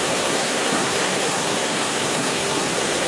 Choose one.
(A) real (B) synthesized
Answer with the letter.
B